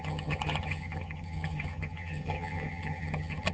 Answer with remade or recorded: remade